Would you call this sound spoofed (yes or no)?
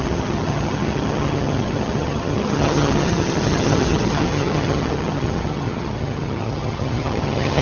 yes